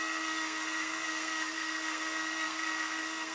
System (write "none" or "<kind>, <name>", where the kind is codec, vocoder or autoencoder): codec, SNAC